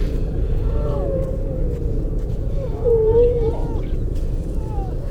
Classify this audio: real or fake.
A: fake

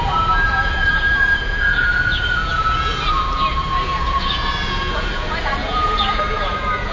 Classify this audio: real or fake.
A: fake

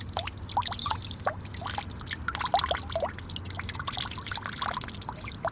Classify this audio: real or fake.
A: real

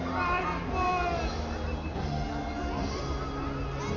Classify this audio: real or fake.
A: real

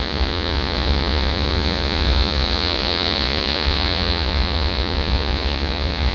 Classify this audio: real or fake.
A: fake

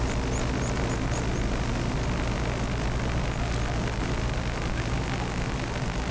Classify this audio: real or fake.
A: real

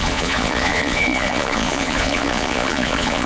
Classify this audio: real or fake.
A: fake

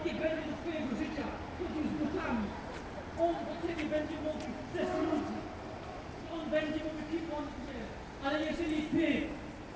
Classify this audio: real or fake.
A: real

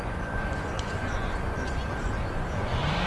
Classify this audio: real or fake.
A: fake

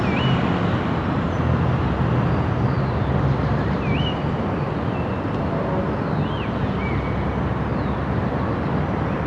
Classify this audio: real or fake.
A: real